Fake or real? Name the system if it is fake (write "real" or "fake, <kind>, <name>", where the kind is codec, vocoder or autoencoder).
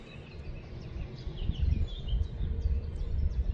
fake, vocoder, Vocos